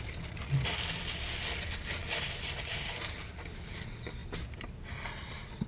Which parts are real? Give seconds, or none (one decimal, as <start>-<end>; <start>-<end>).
0.0-5.7